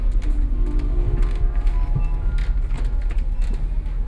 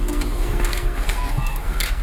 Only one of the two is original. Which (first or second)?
first